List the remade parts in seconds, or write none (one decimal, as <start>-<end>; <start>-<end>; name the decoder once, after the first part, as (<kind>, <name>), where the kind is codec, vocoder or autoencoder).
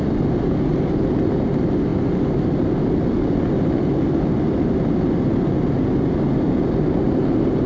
none